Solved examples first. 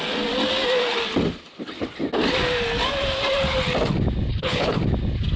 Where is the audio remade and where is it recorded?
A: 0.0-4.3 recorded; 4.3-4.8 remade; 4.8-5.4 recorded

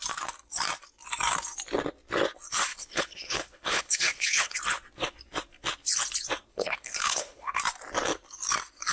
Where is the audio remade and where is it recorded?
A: 0.0-2.7 recorded; 2.7-4.6 remade; 4.6-6.5 recorded; 6.5-7.6 remade; 7.6-8.9 recorded

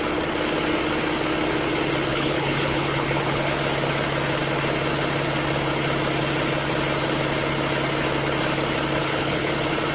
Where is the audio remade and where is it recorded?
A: 0.0-2.1 recorded; 2.1-3.6 remade; 3.6-9.0 recorded; 9.0-9.5 remade; 9.5-9.9 recorded

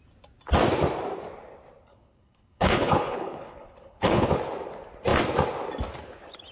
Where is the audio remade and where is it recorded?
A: 0.0-1.9 recorded; 1.9-4.3 remade; 4.3-6.5 recorded

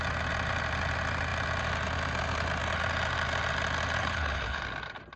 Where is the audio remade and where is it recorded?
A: 0.0-4.0 recorded; 4.0-4.6 remade; 4.6-5.2 recorded

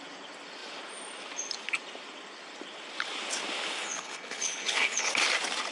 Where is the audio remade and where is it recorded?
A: 0.0-3.8 recorded; 3.8-5.1 remade; 5.1-5.7 recorded

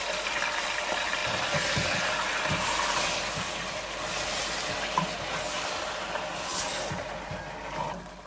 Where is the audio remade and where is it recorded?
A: 0.0-8.3 recorded